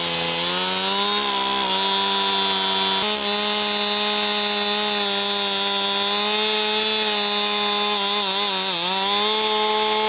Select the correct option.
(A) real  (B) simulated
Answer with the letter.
A